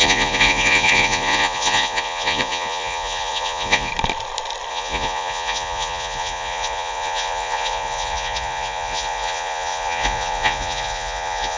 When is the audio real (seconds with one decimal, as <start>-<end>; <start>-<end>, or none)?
3.9-4.7